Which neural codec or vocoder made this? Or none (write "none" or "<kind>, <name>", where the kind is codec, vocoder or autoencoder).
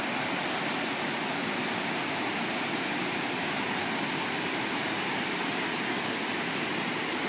none